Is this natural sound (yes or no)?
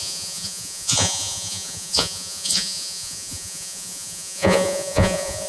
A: no